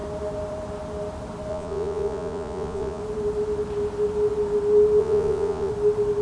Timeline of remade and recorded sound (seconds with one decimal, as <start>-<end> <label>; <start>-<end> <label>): 0.0-1.5 recorded; 1.5-3.0 remade; 3.0-5.0 recorded; 5.0-5.7 remade; 5.7-6.2 recorded